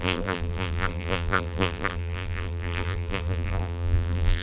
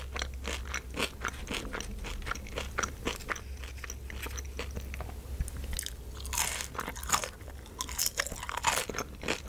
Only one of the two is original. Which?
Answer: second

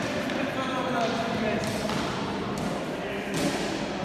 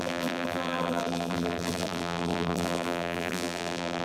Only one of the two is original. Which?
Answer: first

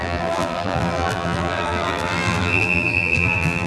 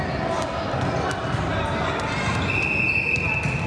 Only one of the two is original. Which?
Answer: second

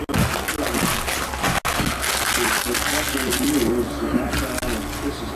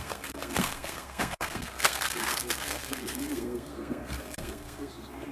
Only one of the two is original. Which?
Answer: first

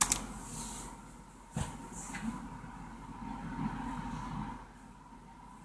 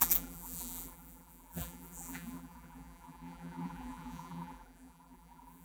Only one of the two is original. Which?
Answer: first